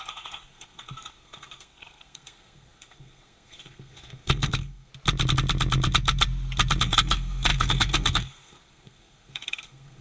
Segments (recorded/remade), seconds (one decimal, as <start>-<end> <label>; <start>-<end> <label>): 0.0-4.9 remade; 4.9-6.8 recorded; 6.8-10.0 remade